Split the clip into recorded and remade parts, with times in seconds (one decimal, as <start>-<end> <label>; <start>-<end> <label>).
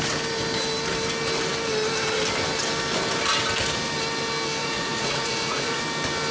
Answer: 0.0-4.6 recorded; 4.6-5.8 remade; 5.8-6.3 recorded